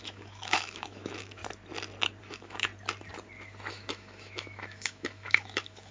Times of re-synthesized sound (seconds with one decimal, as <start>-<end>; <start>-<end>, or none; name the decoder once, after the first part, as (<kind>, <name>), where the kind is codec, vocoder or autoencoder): 0.0-1.4 (autoencoder, DAC-VAE); 2.2-2.7; 3.7-5.9